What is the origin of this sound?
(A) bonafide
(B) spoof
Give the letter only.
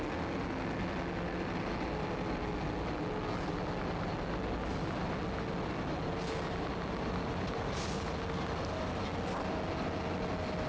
A